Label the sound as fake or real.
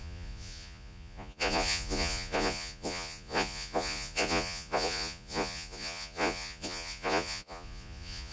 fake